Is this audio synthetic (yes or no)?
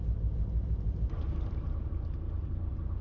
yes